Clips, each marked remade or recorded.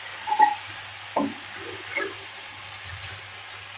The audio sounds recorded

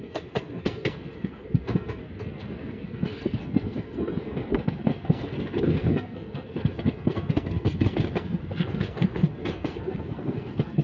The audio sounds remade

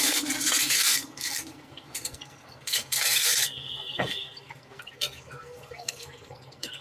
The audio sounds remade